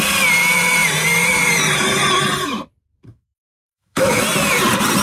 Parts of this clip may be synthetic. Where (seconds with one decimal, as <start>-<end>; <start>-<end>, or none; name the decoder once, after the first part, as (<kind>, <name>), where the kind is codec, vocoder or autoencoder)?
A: 3.1-4.2 (autoencoder, DAC-VAE)